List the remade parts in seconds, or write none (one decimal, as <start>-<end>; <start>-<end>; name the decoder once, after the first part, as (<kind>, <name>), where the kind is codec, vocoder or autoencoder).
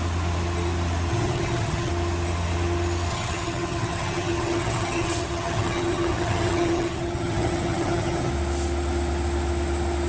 1.1-1.9 (vocoder, HiFi-GAN); 3.1-8.3